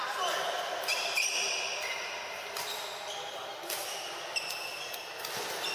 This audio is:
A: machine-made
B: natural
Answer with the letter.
B